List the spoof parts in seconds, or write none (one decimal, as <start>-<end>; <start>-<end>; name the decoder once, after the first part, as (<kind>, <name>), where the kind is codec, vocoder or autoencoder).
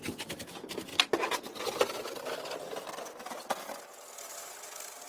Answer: none